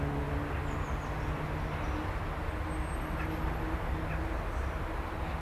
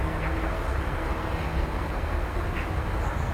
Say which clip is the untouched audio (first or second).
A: first